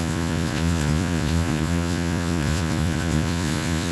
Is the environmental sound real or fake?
fake